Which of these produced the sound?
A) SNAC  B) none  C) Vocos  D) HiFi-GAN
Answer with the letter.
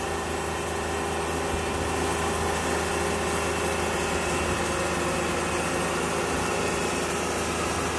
B